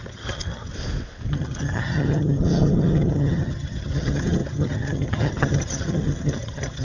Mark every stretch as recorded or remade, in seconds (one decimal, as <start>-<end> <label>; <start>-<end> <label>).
0.0-0.7 remade; 0.7-1.3 recorded; 1.3-6.8 remade

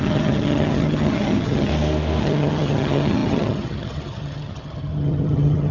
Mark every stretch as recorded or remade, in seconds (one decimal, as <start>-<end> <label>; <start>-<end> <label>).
0.0-1.7 remade; 1.7-2.2 recorded; 2.2-5.7 remade

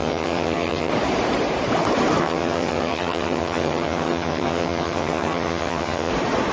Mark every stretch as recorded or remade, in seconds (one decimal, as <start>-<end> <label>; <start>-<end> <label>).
0.0-0.9 remade; 0.9-2.2 recorded; 2.2-6.1 remade; 6.1-6.5 recorded

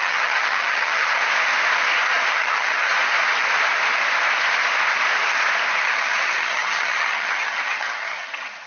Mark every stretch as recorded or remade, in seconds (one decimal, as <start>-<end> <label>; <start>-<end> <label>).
0.0-1.2 remade; 1.2-2.3 recorded; 2.3-2.9 remade; 2.9-5.8 recorded; 5.8-8.7 remade

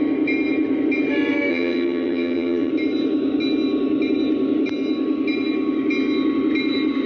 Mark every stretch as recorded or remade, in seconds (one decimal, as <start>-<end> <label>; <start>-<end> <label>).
0.0-1.5 recorded; 1.5-2.7 remade; 2.7-7.1 recorded